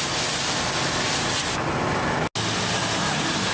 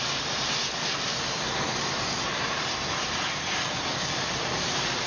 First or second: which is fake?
second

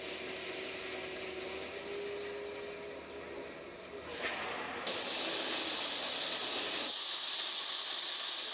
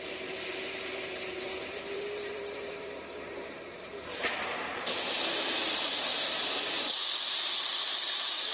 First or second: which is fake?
second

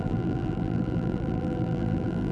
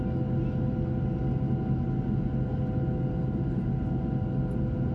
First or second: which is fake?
first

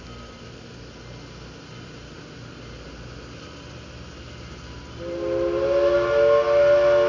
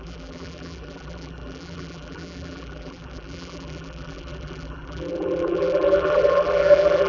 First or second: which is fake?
second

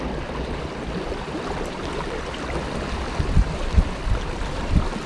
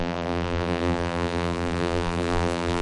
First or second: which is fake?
second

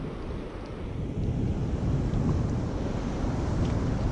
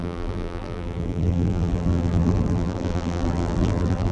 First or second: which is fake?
second